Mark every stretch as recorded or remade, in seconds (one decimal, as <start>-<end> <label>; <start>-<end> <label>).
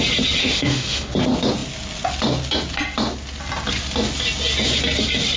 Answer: 0.0-0.4 recorded; 0.4-1.1 remade; 1.1-5.4 recorded